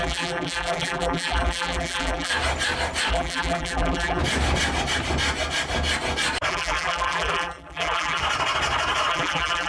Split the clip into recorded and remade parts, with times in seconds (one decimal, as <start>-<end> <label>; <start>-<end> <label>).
0.0-2.3 remade; 2.3-3.1 recorded; 3.1-4.2 remade; 4.2-6.5 recorded; 6.5-8.2 remade; 8.2-9.1 recorded; 9.1-9.7 remade